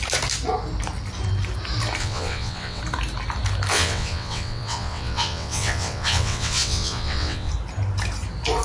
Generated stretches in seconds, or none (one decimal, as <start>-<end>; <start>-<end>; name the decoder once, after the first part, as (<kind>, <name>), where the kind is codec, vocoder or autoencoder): 2.0-2.8 (vocoder, WaveNeXt); 3.7-7.5